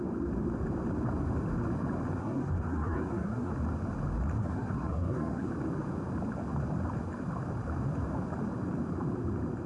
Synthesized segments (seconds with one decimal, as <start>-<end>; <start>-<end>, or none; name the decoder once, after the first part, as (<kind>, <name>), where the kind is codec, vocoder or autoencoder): 2.2-3.5 (codec, SNAC); 4.4-5.5